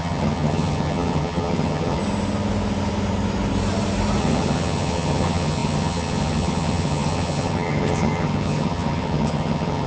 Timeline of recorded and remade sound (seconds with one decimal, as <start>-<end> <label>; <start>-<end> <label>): 0.0-2.0 remade; 2.0-4.2 recorded; 4.2-9.9 remade